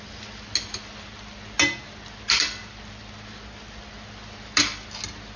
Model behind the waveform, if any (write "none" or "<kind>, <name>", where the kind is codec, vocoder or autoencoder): none